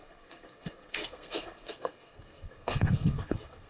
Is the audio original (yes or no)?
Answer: no